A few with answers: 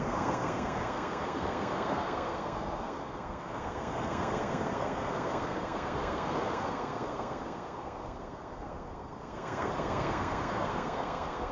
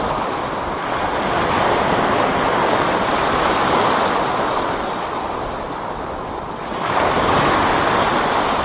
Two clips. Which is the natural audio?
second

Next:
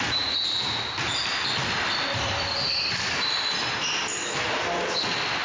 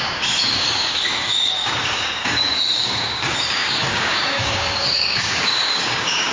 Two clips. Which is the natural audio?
first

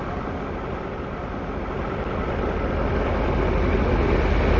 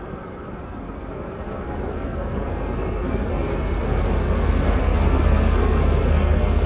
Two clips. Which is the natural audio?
first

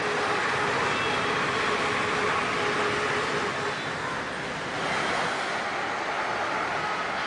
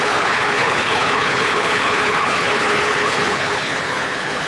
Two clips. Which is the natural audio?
first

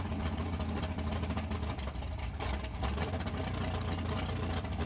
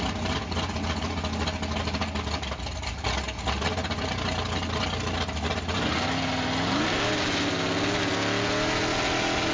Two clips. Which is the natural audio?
second